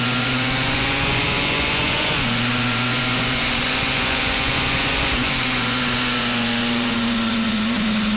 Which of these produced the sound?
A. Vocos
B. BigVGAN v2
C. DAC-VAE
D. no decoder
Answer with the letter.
A